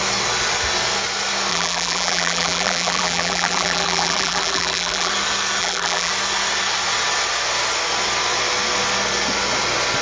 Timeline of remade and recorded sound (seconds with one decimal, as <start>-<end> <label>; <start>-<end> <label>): 0.0-1.5 recorded; 1.5-5.1 remade; 5.1-5.6 recorded; 5.6-6.1 remade; 6.1-10.0 recorded